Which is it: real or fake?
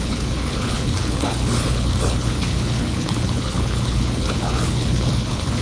fake